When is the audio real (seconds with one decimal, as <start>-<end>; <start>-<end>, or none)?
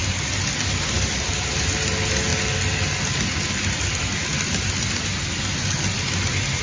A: 0.0-6.6